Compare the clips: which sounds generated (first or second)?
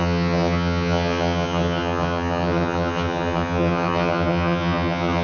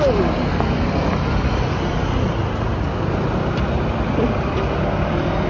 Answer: first